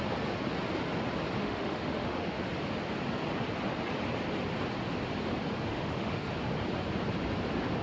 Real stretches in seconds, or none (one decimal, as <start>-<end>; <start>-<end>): 0.0-1.4; 2.4-5.7; 6.3-7.8